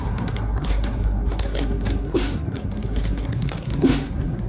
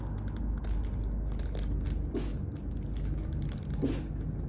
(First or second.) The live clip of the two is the second